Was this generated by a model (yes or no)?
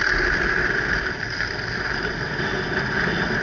no